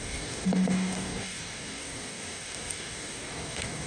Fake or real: fake